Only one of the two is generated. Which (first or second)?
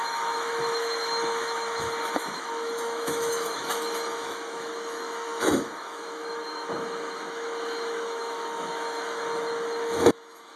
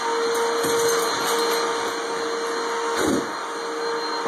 first